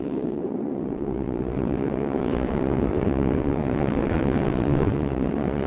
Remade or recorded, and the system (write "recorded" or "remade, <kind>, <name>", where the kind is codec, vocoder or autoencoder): remade, vocoder, WaveNeXt